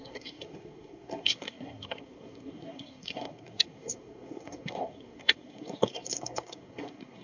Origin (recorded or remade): remade